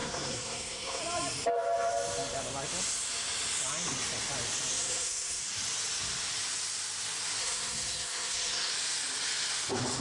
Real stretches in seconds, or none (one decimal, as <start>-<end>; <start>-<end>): 1.0-4.7; 5.4-7.4; 8.7-10.0